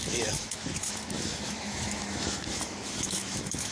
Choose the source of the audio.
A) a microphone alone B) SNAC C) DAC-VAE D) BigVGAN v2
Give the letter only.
C